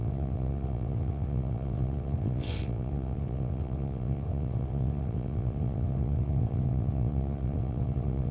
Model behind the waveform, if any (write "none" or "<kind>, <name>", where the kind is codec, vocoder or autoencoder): vocoder, WaveNeXt